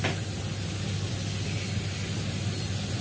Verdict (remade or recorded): recorded